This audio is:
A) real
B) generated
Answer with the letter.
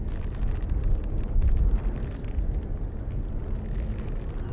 A